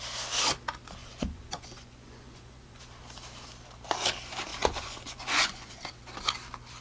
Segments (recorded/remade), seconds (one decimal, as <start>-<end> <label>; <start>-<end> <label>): 0.0-1.0 recorded; 1.0-2.8 remade; 2.8-4.5 recorded; 4.5-5.7 remade; 5.7-6.8 recorded